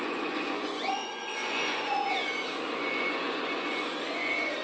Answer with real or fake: fake